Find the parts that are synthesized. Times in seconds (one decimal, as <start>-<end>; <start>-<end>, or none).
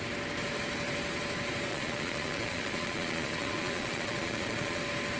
1.7-4.8